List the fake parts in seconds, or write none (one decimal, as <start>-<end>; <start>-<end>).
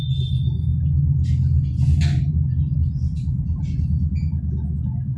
none